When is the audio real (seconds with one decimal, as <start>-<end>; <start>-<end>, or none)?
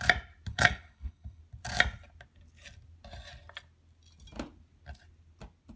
0.0-0.5; 1.4-5.8